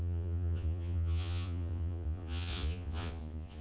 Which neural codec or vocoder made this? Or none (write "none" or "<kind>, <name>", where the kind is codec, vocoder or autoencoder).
vocoder, Vocos